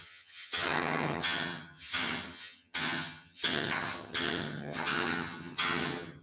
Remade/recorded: remade